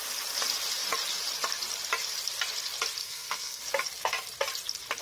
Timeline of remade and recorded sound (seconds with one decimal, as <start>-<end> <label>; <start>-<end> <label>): 0.0-3.0 recorded; 3.0-3.6 remade; 3.6-5.0 recorded